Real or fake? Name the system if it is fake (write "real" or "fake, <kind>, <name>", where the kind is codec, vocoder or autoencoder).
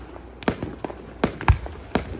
real